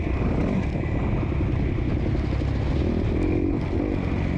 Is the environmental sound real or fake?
real